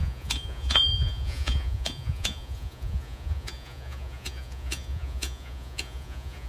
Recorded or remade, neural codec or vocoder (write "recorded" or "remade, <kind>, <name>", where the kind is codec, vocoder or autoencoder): remade, vocoder, Vocos